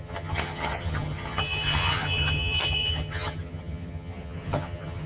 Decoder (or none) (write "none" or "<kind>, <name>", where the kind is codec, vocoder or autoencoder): vocoder, HiFi-GAN